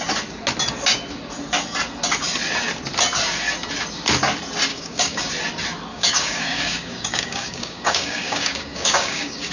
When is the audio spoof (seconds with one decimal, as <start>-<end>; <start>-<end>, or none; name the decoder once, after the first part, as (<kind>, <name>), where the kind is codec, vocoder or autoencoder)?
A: 4.7-5.3 (codec, DAC); 5.9-9.5